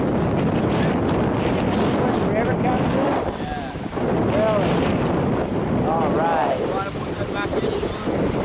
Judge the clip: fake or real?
real